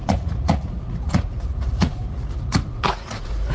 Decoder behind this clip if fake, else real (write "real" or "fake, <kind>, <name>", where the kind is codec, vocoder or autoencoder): fake, vocoder, Vocos